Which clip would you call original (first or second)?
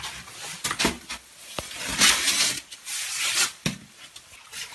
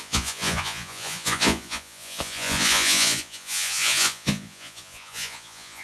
first